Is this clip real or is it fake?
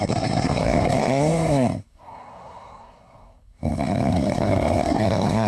fake